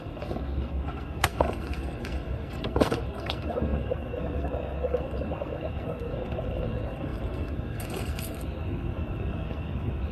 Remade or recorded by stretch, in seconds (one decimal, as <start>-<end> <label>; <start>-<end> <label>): 0.0-10.1 remade